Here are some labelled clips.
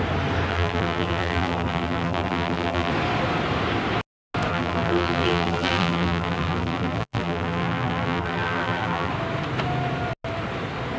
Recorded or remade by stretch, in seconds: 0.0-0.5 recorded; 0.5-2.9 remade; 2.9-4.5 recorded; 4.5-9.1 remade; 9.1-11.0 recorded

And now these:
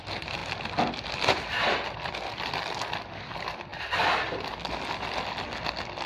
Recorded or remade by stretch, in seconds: 0.0-6.1 recorded